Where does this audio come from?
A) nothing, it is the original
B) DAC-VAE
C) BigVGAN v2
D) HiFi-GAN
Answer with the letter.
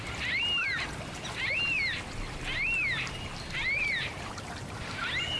A